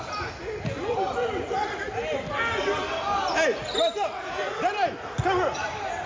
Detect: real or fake real